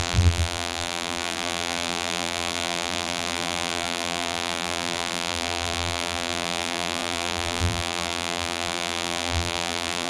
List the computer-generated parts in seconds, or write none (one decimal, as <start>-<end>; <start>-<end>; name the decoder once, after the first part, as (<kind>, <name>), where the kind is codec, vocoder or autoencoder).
0.0-10.1 (vocoder, BigVGAN v2)